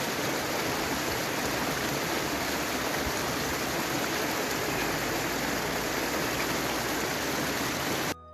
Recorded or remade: recorded